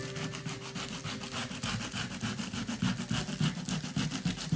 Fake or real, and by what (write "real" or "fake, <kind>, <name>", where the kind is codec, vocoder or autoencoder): real